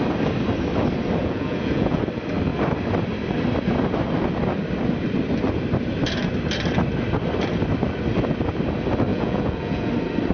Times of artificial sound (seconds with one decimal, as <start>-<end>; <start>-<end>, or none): 1.2-2.0; 9.1-9.9